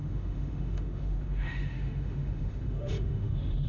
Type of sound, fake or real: fake